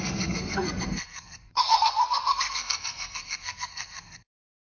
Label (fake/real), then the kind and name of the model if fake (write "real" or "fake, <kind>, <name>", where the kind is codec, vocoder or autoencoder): fake, codec, SNAC